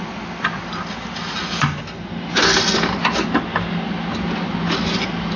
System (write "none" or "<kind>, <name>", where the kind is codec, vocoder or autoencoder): none